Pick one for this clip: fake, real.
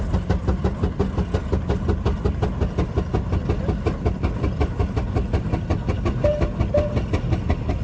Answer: real